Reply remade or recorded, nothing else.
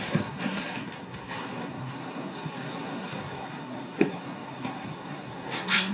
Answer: remade